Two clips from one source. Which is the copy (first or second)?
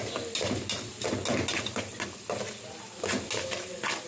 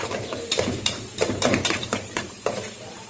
second